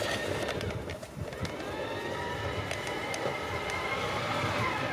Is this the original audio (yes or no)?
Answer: yes